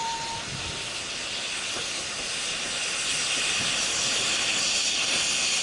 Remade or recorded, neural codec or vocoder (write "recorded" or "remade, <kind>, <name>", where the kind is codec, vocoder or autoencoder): recorded